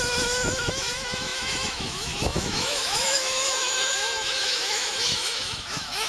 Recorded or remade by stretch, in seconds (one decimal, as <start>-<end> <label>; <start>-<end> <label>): 0.0-6.1 remade